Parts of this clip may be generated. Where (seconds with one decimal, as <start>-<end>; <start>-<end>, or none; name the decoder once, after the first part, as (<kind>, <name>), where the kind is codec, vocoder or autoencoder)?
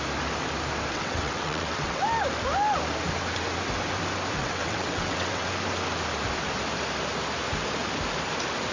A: 0.9-2.0 (vocoder, WaveNeXt); 4.4-5.5